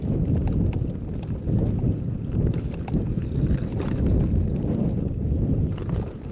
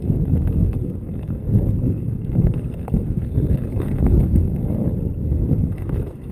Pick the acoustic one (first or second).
first